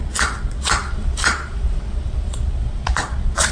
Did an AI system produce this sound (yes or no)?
yes